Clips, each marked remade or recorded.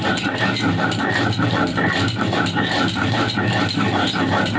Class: recorded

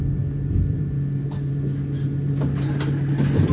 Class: recorded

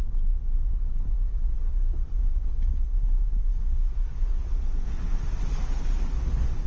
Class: recorded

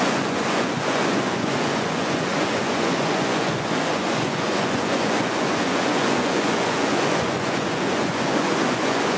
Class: remade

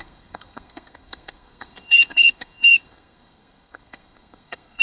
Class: remade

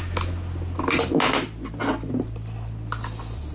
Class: recorded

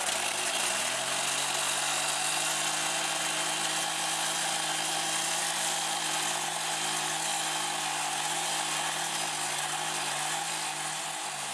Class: recorded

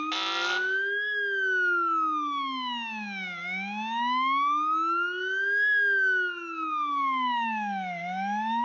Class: recorded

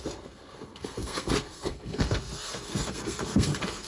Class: remade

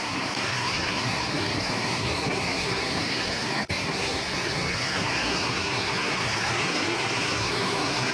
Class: remade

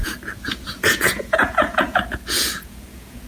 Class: remade